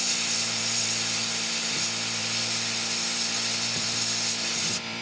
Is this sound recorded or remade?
remade